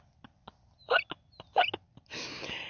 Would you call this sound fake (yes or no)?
no